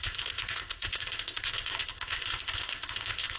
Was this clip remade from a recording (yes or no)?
yes